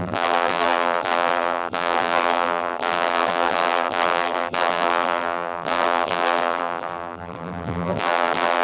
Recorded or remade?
remade